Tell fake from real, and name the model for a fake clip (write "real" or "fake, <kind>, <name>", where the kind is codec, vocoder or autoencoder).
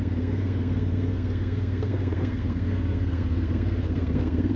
fake, codec, SNAC